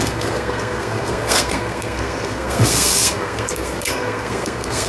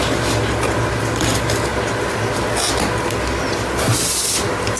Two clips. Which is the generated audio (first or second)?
first